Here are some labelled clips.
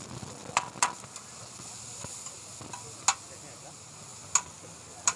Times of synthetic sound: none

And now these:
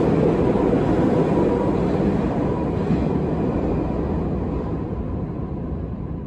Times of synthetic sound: none

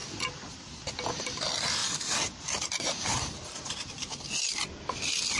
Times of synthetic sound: 1.8-4.3

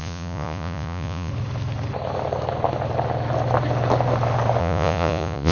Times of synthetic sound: 0.0-1.3; 4.6-5.5

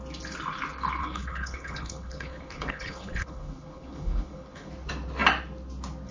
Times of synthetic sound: 1.0-4.7

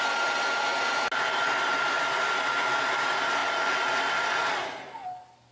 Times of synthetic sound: none